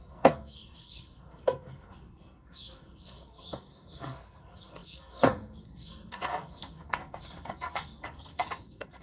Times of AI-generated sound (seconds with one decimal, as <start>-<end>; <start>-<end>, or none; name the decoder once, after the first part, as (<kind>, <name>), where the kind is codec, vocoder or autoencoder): 0.0-9.0 (codec, SNAC)

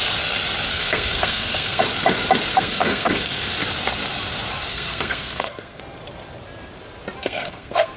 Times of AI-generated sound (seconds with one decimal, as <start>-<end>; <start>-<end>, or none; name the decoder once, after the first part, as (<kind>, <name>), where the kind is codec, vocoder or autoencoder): 0.7-1.8 (codec, SNAC); 2.5-3.6; 4.7-5.8; 7.2-8.0